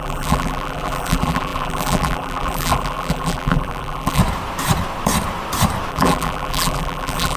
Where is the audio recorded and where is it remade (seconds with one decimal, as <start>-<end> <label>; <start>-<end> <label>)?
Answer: 0.0-4.2 remade; 4.2-5.9 recorded; 5.9-7.4 remade